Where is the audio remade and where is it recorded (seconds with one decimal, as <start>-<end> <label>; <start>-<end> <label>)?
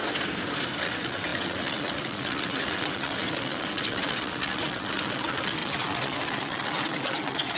0.0-0.8 recorded; 0.8-7.6 remade